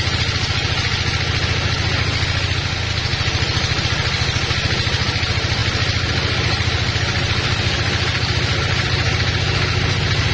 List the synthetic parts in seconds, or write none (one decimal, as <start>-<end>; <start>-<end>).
3.1-3.8; 5.6-10.3